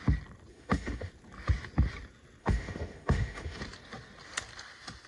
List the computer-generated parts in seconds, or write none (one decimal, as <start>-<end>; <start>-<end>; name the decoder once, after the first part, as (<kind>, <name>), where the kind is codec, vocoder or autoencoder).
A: 0.5-1.1 (autoencoder, DAC-VAE); 2.4-3.6